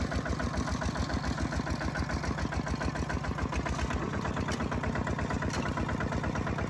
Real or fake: real